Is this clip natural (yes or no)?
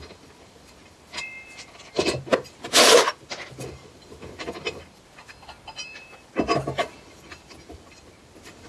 no